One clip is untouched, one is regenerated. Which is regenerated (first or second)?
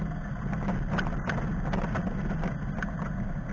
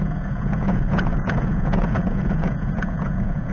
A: second